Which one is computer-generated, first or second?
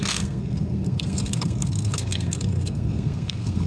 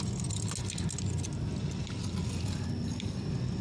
first